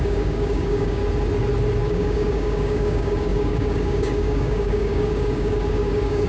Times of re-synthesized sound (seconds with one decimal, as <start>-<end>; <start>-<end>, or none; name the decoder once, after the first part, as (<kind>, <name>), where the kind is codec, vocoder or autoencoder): 0.0-1.0 (codec, DAC); 1.9-6.3